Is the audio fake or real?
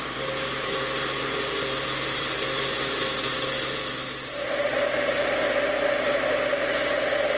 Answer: real